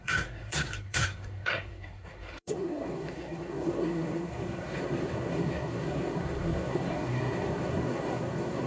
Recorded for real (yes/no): no